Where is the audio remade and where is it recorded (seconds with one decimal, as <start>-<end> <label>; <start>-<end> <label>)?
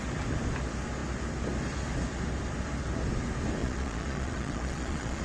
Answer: 0.0-3.6 recorded; 3.6-5.2 remade